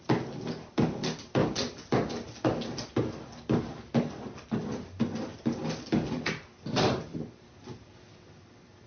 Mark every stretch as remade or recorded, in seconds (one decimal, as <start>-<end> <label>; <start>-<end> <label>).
0.0-8.9 recorded